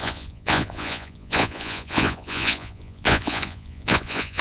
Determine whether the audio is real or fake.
fake